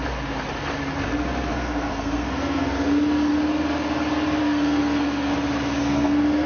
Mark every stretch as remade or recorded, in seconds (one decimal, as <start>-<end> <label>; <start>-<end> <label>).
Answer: 0.0-1.5 recorded; 1.5-3.3 remade; 3.3-4.4 recorded; 4.4-5.3 remade; 5.3-5.8 recorded; 5.8-6.5 remade